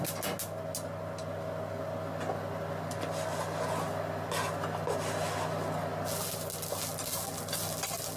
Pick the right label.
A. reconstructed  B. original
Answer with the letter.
B